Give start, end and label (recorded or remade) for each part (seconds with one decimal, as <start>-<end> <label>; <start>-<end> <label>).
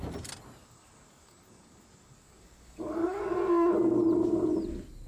0.0-0.6 recorded; 0.6-3.2 remade; 3.2-5.1 recorded